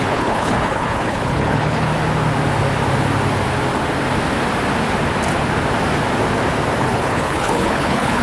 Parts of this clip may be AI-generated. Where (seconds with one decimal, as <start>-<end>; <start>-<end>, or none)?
0.0-1.9; 6.8-8.2